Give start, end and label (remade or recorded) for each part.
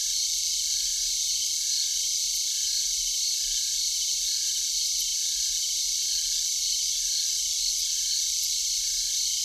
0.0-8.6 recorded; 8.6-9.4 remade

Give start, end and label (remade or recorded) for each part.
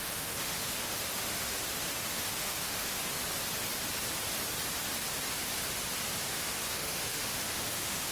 0.0-3.0 remade; 3.0-6.3 recorded; 6.3-8.1 remade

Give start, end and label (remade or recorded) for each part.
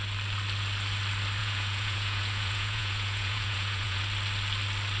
0.0-1.4 recorded; 1.4-4.0 remade; 4.0-5.0 recorded